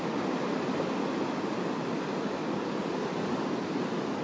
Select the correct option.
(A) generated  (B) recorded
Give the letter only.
B